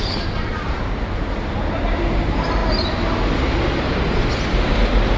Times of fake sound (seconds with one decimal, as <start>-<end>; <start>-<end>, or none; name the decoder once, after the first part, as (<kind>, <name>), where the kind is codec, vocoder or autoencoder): none